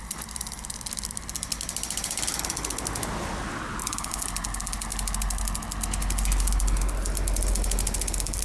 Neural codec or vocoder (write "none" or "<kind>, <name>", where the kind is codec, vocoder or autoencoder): none